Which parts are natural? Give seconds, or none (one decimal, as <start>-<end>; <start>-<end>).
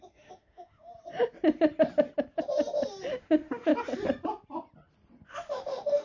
0.9-3.1; 3.7-5.3